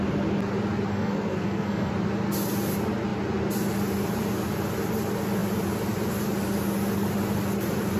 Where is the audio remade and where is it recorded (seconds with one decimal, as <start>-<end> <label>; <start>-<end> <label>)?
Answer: 0.0-0.9 recorded; 0.9-1.9 remade; 1.9-8.0 recorded